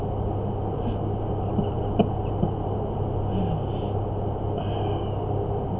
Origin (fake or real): real